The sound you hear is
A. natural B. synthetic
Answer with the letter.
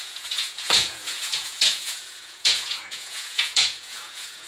B